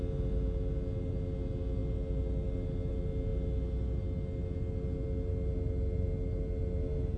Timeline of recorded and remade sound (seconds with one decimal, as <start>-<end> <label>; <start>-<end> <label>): 0.0-7.2 recorded